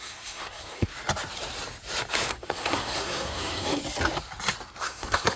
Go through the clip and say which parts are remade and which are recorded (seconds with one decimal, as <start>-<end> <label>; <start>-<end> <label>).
0.0-0.9 remade; 0.9-2.3 recorded; 2.3-3.8 remade; 3.8-4.8 recorded; 4.8-5.4 remade